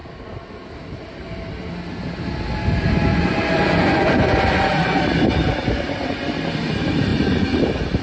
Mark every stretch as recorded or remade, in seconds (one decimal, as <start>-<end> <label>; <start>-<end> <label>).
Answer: 0.0-3.1 recorded; 3.1-5.0 remade; 5.0-7.1 recorded; 7.1-7.6 remade; 7.6-8.0 recorded